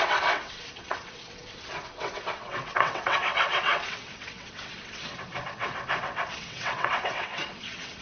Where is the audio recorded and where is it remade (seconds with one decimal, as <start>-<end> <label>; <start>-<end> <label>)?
0.0-8.0 remade